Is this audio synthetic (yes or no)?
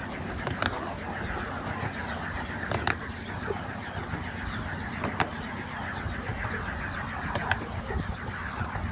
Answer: no